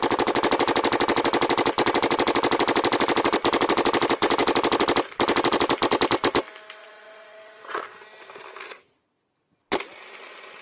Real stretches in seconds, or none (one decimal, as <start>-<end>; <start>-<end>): 0.0-6.8; 7.8-10.6